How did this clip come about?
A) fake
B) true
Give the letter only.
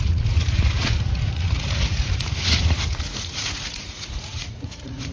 A